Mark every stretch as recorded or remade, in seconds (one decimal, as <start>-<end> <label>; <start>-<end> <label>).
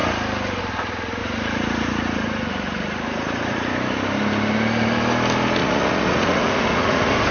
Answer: 0.0-1.2 recorded; 1.2-3.7 remade; 3.7-5.6 recorded; 5.6-7.3 remade